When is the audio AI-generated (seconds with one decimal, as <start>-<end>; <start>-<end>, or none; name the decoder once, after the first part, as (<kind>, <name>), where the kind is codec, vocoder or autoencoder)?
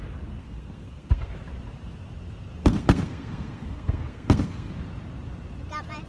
0.4-1.3 (codec, SNAC); 2.6-4.7